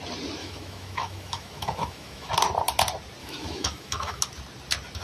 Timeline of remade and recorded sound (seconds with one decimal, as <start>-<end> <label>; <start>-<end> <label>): 0.0-0.4 recorded; 0.4-2.3 remade; 2.3-3.2 recorded; 3.2-4.2 remade; 4.2-5.0 recorded